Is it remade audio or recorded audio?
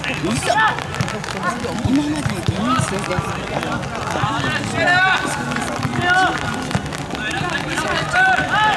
recorded